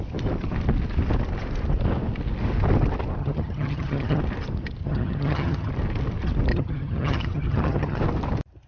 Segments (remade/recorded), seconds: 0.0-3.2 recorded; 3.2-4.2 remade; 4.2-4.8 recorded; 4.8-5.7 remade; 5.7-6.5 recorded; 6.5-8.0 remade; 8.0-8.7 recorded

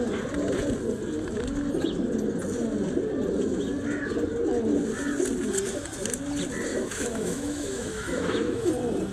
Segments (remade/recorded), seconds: 0.0-6.7 recorded; 6.7-8.7 remade; 8.7-9.1 recorded

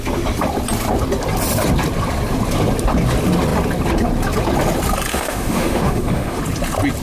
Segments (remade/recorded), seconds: 0.0-5.1 recorded; 5.1-6.4 remade; 6.4-7.0 recorded

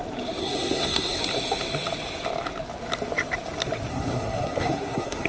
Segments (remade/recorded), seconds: 0.0-0.4 recorded; 0.4-1.2 remade; 1.2-3.9 recorded; 3.9-5.3 remade